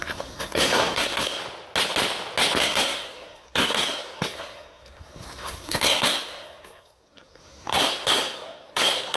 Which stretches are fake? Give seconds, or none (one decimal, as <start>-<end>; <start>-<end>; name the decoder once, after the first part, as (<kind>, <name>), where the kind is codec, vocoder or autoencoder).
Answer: 0.0-1.4 (codec, SNAC); 2.6-9.2